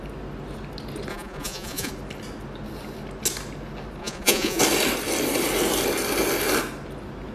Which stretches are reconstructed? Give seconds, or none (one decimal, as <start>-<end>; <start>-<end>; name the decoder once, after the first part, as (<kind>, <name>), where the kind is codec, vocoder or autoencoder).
1.1-1.9 (vocoder, Vocos); 4.0-4.6